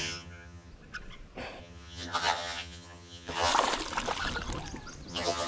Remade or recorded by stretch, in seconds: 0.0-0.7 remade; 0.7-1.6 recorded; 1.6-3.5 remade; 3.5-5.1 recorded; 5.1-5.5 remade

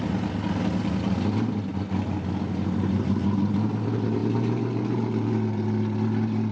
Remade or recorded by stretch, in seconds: 0.0-6.5 recorded

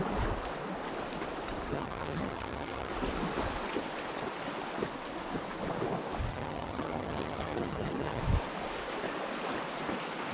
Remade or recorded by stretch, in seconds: 0.0-1.7 recorded; 1.7-2.9 remade; 2.9-6.3 recorded; 6.3-8.2 remade; 8.2-10.3 recorded